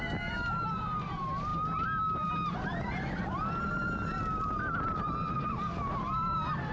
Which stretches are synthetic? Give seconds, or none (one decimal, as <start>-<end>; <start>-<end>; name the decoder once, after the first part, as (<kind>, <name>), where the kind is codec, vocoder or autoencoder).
none